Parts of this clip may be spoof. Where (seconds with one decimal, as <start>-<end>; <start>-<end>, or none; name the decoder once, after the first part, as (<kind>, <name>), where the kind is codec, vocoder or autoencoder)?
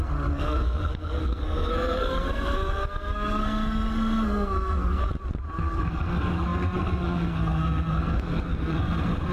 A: 0.0-5.0 (codec, SNAC); 5.6-9.3